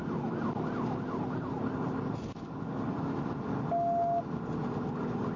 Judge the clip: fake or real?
real